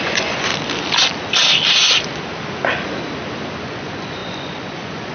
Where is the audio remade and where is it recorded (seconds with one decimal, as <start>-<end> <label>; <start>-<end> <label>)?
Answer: 0.0-0.5 remade; 0.5-3.6 recorded; 3.6-5.1 remade